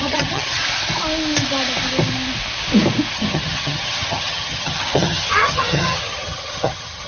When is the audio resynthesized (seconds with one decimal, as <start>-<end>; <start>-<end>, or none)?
0.0-0.6; 3.1-7.1